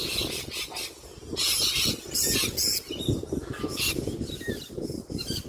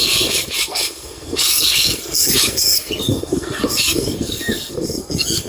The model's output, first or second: second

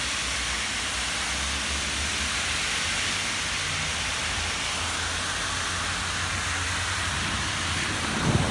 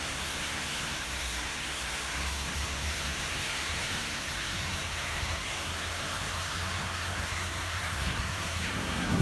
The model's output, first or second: second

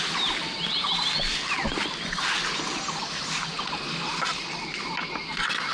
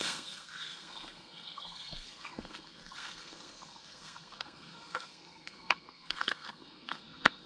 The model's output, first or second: second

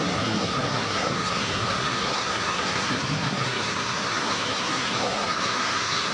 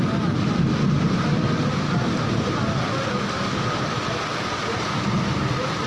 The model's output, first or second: first